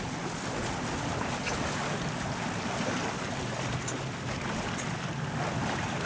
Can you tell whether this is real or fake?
real